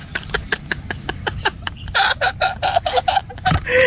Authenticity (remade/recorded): recorded